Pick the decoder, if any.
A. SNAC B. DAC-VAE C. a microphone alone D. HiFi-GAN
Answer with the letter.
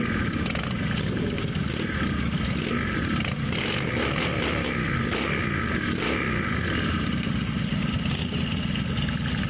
C